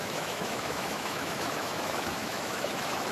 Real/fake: fake